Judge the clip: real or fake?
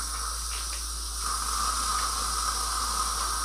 real